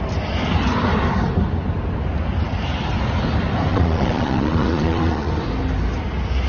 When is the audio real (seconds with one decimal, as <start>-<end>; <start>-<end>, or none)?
0.0-3.7; 5.3-6.5